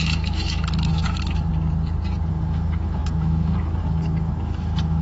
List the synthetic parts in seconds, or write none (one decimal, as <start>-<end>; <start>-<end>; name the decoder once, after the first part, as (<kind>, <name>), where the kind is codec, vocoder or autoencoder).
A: 0.0-1.5 (autoencoder, DAC-VAE); 2.3-5.0